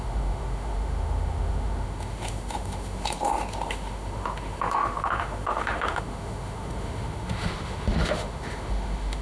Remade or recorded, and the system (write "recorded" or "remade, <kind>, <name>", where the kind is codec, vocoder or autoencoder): remade, autoencoder, DAC-VAE